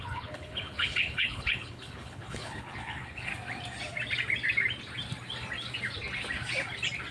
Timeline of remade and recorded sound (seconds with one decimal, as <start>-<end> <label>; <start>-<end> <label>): 0.0-3.3 remade; 3.3-7.1 recorded